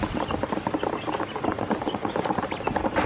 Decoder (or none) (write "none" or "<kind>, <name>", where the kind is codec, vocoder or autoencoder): none